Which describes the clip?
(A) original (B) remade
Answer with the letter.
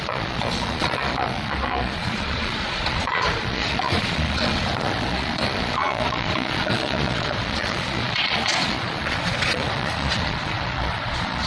B